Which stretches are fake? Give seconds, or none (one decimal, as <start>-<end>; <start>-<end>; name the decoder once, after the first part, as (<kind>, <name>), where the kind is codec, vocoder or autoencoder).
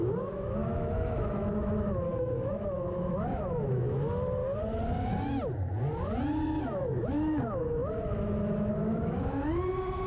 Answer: 0.0-4.4 (autoencoder, DAC-VAE); 6.6-10.1